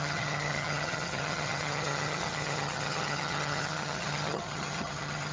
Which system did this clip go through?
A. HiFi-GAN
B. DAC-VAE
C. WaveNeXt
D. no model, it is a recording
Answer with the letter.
A